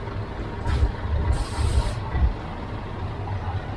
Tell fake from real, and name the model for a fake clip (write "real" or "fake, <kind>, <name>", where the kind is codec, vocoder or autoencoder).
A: real